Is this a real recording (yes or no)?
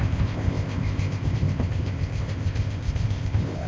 no